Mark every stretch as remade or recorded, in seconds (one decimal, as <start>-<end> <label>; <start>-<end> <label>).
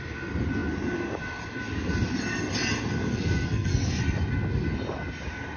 0.0-3.1 recorded; 3.1-4.0 remade; 4.0-5.6 recorded